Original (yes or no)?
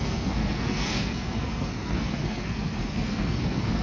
no